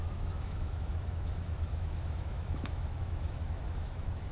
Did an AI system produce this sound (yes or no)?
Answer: yes